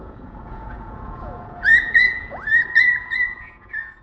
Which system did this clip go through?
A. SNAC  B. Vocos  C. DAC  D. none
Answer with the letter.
B